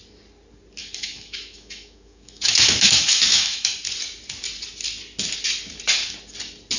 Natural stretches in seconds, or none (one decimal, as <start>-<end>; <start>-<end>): 0.0-0.8; 3.7-6.8